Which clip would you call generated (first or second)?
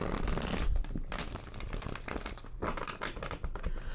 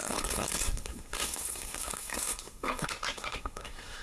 second